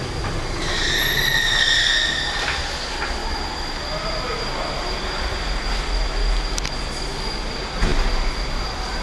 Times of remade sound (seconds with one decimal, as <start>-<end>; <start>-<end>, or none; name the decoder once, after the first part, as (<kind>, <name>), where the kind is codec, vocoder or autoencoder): 3.2-5.5 (vocoder, BigVGAN v2); 7.9-9.0